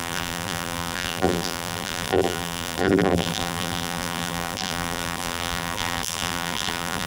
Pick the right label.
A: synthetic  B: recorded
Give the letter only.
A